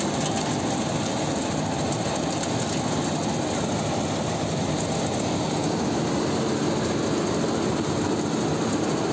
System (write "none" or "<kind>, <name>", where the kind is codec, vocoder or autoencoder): none